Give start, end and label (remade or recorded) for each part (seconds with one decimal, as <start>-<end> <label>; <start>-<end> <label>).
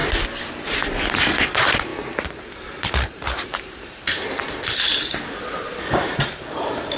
0.0-1.9 recorded; 1.9-3.9 remade; 3.9-5.7 recorded; 5.7-7.0 remade